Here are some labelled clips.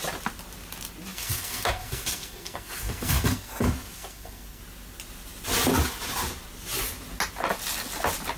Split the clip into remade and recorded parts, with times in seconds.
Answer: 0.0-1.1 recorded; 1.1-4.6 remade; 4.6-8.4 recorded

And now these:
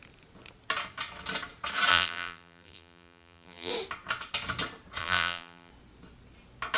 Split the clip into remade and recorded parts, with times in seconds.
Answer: 0.0-1.9 recorded; 1.9-3.7 remade; 3.7-5.0 recorded; 5.0-5.7 remade; 5.7-6.8 recorded

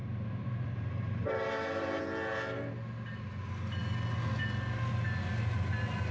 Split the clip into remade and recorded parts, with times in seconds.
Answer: 0.0-2.0 remade; 2.0-6.1 recorded